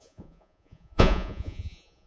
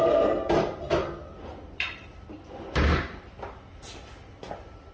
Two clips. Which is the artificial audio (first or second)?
first